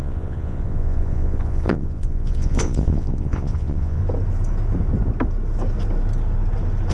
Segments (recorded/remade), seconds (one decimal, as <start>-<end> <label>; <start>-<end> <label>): 0.0-4.0 remade; 4.0-6.9 recorded